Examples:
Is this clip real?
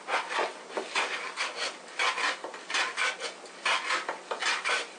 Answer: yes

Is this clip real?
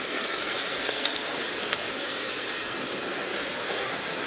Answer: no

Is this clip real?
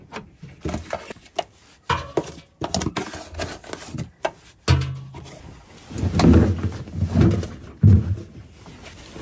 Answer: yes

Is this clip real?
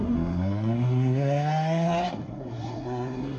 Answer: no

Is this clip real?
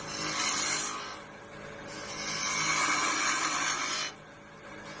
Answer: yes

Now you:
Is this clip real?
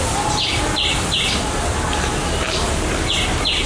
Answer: yes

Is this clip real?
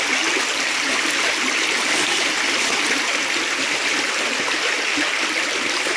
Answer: yes